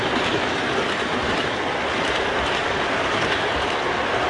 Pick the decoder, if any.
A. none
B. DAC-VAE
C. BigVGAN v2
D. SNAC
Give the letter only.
A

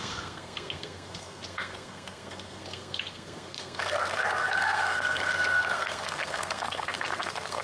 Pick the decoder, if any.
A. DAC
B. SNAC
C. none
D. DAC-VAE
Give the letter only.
B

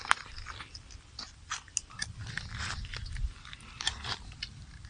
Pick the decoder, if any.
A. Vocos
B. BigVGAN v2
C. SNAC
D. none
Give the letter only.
D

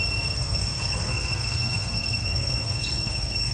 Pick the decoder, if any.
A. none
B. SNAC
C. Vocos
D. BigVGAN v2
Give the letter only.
B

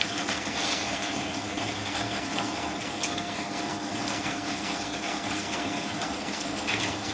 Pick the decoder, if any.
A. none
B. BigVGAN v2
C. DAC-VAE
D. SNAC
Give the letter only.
D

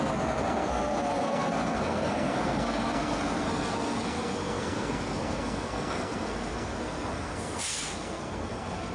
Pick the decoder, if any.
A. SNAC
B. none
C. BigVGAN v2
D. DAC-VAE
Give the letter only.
A